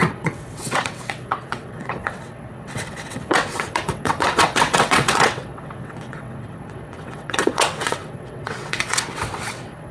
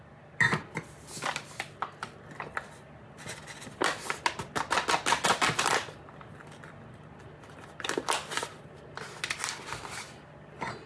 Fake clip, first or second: first